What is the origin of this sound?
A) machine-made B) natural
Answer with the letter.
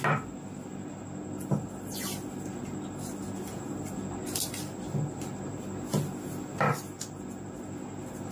B